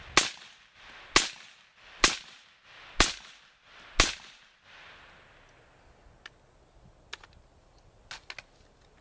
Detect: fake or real real